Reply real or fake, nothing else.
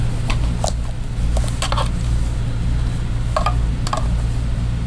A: real